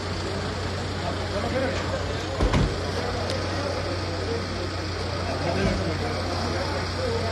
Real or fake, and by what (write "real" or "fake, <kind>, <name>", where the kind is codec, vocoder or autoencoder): real